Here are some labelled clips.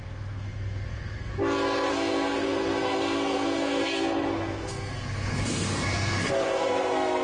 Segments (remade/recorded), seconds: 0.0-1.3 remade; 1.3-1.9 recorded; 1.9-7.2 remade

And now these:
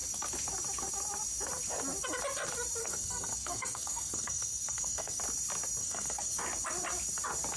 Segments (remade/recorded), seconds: 0.0-2.8 recorded; 2.8-5.2 remade; 5.2-5.8 recorded; 5.8-6.4 remade; 6.4-7.6 recorded